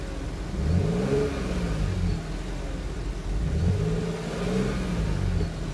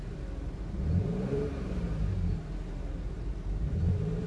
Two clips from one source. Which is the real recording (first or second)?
first